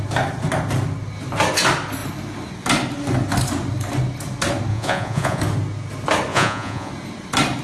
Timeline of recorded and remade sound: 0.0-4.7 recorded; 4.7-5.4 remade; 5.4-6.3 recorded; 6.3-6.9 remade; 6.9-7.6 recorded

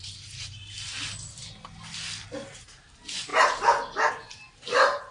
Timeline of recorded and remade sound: 0.0-5.1 recorded

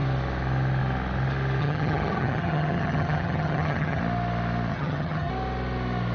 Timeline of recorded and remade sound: 0.0-1.6 recorded; 1.6-4.0 remade; 4.0-4.7 recorded; 4.7-5.3 remade; 5.3-6.1 recorded

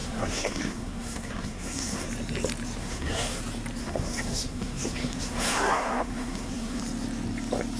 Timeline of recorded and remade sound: 0.0-2.1 remade; 2.1-2.8 recorded; 2.8-3.4 remade; 3.4-3.8 recorded; 3.8-6.8 remade; 6.8-7.8 recorded